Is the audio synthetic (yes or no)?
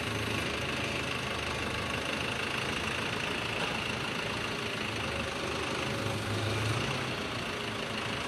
no